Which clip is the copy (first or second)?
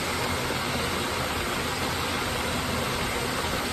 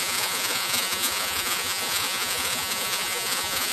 second